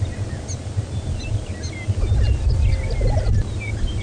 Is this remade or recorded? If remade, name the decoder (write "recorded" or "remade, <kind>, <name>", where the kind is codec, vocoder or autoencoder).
recorded